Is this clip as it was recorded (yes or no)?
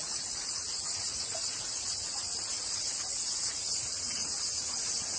no